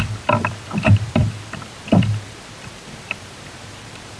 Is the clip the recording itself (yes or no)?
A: no